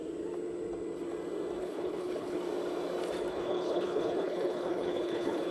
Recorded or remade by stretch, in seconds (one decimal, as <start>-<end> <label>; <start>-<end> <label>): 0.0-1.6 recorded; 1.6-2.4 remade; 2.4-3.3 recorded; 3.3-5.5 remade